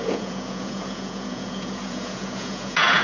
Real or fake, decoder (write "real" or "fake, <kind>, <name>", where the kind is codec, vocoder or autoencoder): fake, vocoder, Vocos